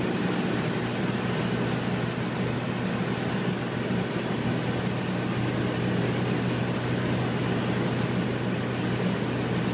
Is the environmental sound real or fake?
real